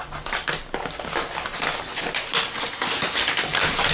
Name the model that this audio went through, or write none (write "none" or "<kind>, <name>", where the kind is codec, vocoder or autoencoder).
none